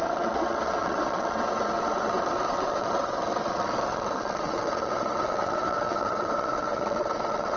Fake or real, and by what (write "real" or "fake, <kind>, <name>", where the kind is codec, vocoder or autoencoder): fake, vocoder, WaveNeXt